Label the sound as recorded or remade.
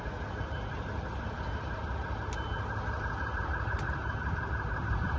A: recorded